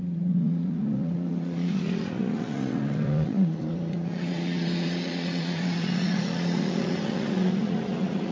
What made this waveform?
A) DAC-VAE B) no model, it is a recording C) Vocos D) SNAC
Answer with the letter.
C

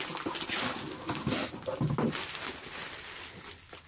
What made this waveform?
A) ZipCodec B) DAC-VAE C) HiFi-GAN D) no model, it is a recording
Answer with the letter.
D